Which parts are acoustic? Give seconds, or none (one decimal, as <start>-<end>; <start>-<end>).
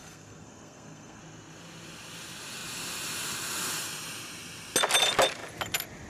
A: 1.2-6.1